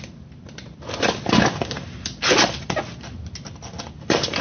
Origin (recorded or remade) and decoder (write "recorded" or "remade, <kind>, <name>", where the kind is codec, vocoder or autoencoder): recorded